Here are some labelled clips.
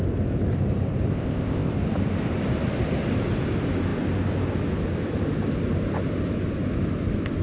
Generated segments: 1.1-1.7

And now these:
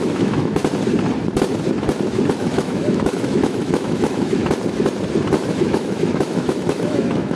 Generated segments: 0.0-0.6; 2.4-4.4; 5.4-7.4

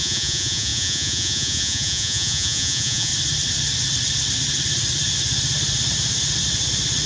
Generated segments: 0.0-3.1

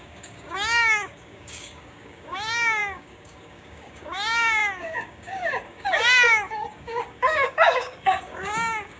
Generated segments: 0.0-9.0

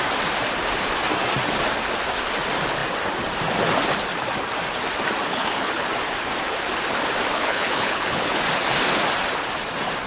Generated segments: 5.3-5.9; 7.3-8.4

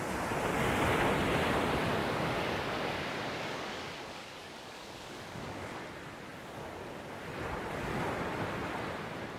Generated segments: 2.0-5.7

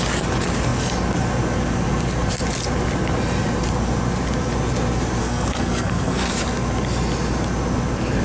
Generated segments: 5.2-6.3